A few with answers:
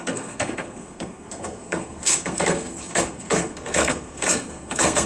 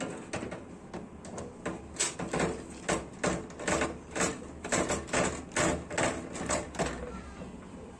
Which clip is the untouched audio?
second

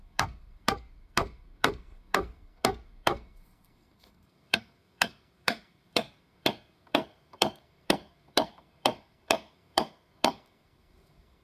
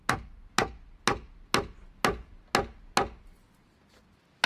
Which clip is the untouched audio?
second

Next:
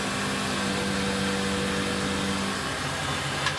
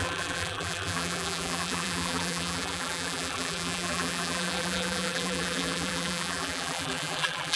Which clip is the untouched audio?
first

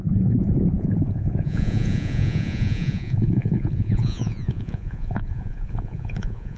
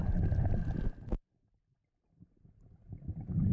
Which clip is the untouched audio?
second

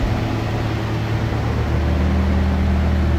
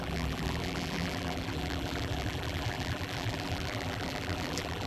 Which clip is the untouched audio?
first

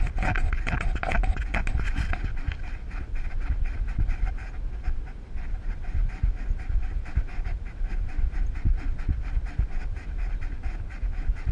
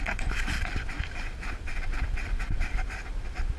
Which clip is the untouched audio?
first